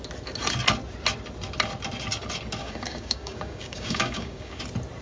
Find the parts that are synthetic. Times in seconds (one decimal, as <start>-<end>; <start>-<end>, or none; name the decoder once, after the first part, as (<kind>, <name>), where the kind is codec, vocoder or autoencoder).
2.6-4.6 (codec, DAC)